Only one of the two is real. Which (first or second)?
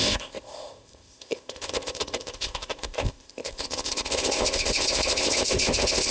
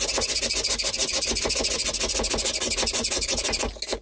second